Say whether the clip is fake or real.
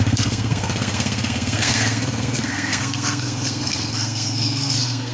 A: fake